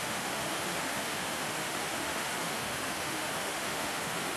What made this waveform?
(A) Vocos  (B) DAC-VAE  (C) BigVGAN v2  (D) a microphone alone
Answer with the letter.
B